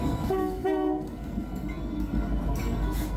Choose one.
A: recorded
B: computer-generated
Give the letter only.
B